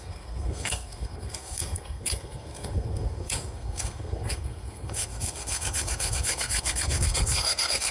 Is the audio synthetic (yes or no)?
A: yes